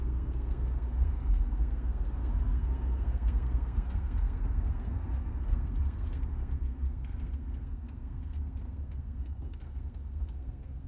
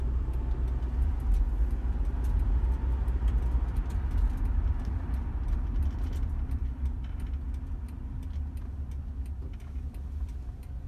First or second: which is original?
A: second